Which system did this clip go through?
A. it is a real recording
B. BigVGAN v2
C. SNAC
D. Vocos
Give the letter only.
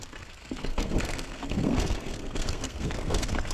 C